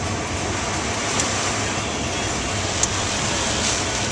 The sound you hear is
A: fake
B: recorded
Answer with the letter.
B